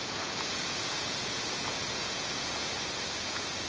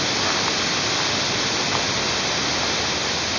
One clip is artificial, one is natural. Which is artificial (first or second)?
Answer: first